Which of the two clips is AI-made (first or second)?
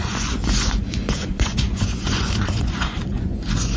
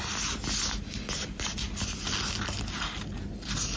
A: first